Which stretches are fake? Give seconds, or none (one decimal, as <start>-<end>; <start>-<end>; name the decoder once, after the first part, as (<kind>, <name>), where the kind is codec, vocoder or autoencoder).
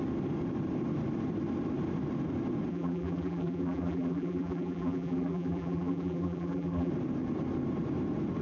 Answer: 2.7-6.9 (vocoder, BigVGAN v2)